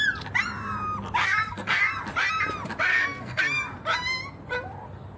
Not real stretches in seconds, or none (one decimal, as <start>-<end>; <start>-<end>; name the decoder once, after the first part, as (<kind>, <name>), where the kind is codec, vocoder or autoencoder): 1.2-1.8 (codec, SNAC); 2.9-3.4